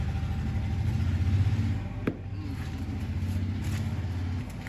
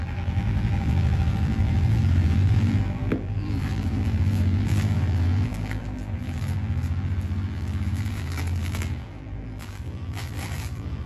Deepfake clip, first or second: second